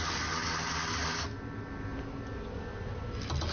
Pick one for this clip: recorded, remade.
recorded